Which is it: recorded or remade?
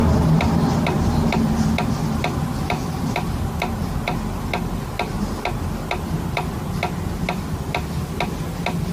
recorded